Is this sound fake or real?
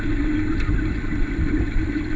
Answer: fake